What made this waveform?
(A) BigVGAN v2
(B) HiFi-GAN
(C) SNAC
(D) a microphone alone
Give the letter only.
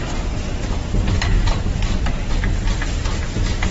D